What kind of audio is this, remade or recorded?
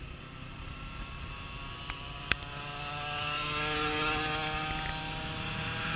recorded